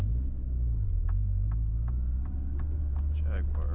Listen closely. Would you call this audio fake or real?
real